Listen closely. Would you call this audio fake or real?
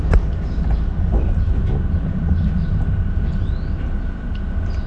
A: real